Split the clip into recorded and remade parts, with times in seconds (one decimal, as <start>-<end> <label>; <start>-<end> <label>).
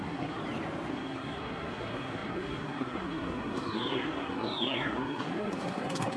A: 0.0-0.4 remade; 0.4-0.9 recorded; 0.9-6.2 remade